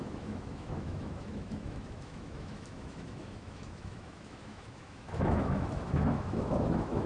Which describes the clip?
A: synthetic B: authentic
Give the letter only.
A